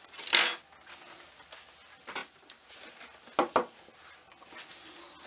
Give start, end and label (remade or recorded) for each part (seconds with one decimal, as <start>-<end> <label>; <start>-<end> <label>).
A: 0.0-2.2 recorded; 2.2-2.7 remade; 2.7-5.3 recorded